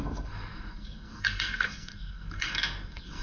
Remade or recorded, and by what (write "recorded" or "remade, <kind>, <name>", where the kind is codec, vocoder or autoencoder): remade, codec, SNAC